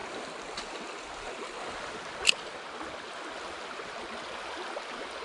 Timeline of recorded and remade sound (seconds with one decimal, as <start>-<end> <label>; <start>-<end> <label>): 0.0-5.2 recorded

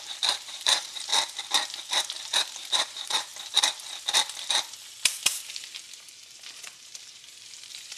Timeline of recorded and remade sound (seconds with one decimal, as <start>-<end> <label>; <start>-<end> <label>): 0.0-1.1 remade; 1.1-1.8 recorded; 1.8-3.3 remade; 3.3-5.2 recorded; 5.2-8.0 remade